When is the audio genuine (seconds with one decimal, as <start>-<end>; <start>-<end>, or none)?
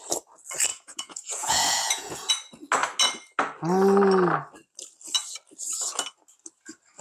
0.0-0.7; 2.3-7.0